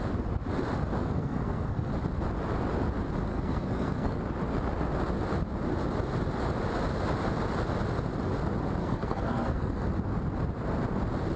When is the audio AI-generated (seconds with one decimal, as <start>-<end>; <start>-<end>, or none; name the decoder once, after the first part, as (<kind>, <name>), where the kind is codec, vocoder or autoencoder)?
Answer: 1.0-1.9 (codec, SNAC); 3.3-4.2; 8.8-9.9